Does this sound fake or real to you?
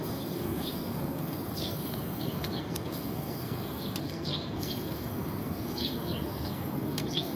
fake